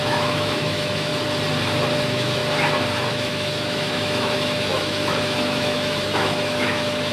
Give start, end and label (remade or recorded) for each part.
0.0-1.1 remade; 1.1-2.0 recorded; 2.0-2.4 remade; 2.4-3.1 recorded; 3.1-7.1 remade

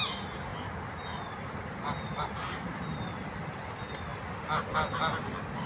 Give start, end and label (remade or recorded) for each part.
0.0-5.7 recorded

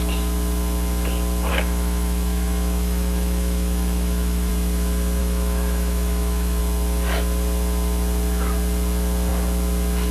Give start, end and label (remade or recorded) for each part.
0.0-1.5 recorded; 1.5-4.5 remade; 4.5-5.2 recorded; 5.2-6.6 remade; 6.6-10.1 recorded

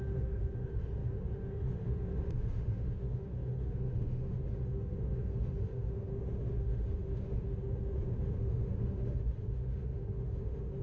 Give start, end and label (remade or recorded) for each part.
0.0-10.8 remade

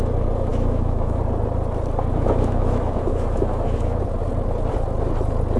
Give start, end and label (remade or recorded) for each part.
0.0-0.5 recorded; 0.5-1.2 remade; 1.2-2.1 recorded; 2.1-4.0 remade; 4.0-5.6 recorded

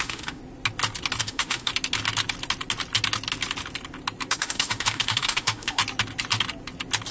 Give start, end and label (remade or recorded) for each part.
0.0-0.4 remade; 0.4-1.2 recorded; 1.2-1.7 remade; 1.7-4.3 recorded; 4.3-5.8 remade; 5.8-7.1 recorded